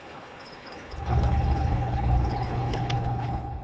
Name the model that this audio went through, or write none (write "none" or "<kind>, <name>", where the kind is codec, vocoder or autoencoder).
codec, HILCodec